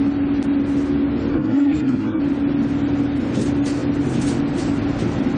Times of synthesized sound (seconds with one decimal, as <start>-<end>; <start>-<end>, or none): 1.3-2.2